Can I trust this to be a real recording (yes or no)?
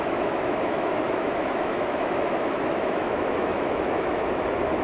no